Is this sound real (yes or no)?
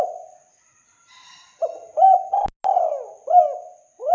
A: yes